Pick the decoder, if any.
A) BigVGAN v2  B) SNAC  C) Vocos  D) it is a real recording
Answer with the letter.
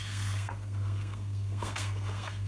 B